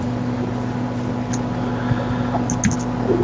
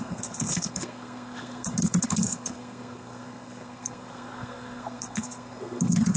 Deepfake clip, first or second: second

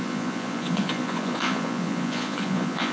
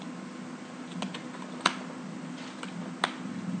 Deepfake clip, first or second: first